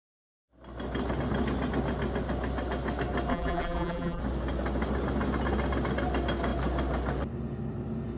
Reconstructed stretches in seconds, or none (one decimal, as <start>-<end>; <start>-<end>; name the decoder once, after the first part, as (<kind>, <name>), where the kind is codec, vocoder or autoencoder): 3.3-4.2 (vocoder, BigVGAN v2)